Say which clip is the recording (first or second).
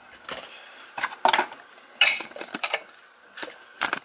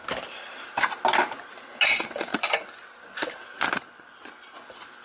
second